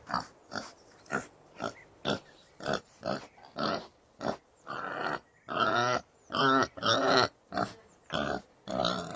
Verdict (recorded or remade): recorded